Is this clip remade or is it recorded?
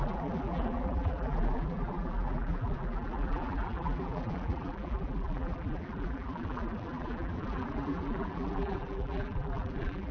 remade